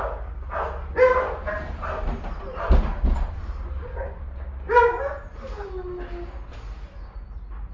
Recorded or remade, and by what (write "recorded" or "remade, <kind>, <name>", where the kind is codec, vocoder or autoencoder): recorded